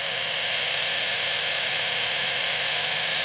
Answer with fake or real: fake